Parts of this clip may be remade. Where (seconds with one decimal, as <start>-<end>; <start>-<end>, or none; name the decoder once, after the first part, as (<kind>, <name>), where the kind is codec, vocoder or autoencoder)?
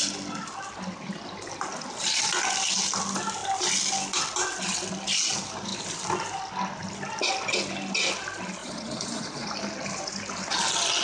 8.6-9.5 (vocoder, Vocos)